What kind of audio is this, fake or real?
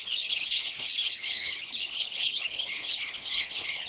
fake